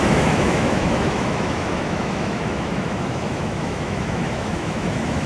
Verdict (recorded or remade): remade